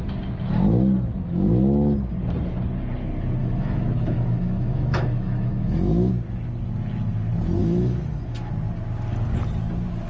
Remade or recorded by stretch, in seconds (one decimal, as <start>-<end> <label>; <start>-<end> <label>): 0.0-3.4 recorded; 3.4-6.1 remade; 6.1-7.6 recorded; 7.6-8.5 remade; 8.5-10.1 recorded